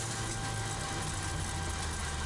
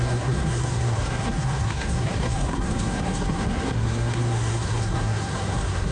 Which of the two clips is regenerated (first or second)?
second